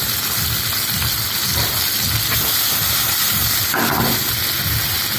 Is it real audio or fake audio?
real